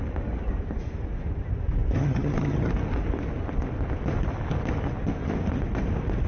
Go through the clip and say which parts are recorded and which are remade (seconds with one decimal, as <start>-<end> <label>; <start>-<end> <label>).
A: 0.0-2.0 recorded; 2.0-2.7 remade; 2.7-6.3 recorded